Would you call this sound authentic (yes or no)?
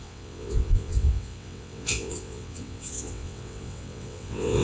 no